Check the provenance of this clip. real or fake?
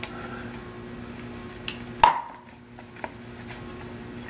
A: real